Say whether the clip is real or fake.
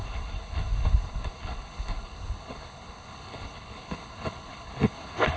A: fake